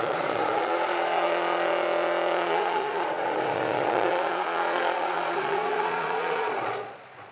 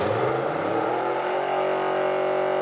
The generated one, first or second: first